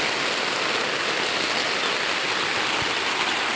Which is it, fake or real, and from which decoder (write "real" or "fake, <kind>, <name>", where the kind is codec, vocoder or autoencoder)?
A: real